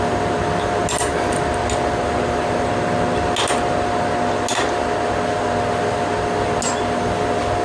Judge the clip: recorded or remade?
recorded